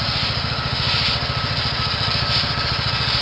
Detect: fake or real real